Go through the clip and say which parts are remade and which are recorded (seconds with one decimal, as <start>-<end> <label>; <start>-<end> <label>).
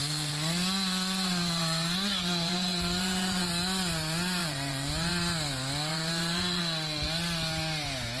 0.0-3.5 remade; 3.5-4.4 recorded; 4.4-5.1 remade; 5.1-5.9 recorded; 5.9-6.6 remade; 6.6-8.2 recorded